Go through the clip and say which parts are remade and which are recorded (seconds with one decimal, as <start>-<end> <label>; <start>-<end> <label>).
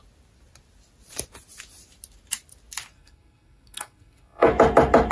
0.0-2.9 recorded; 2.9-4.5 remade; 4.5-5.1 recorded